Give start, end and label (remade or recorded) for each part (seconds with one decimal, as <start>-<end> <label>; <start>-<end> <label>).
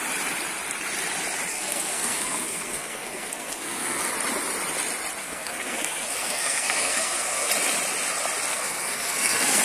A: 0.0-1.5 recorded; 1.5-4.1 remade; 4.1-5.2 recorded; 5.2-7.5 remade; 7.5-8.5 recorded; 8.5-9.6 remade